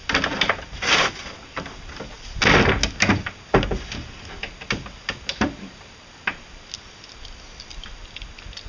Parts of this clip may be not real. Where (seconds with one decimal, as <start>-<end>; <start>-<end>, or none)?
none